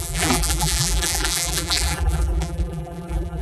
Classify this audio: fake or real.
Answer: fake